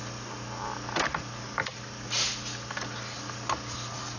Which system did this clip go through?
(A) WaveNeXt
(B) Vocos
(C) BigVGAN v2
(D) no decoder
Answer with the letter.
D